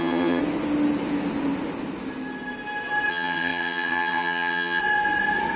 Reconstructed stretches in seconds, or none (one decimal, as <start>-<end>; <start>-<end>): 0.0-0.4; 3.1-4.8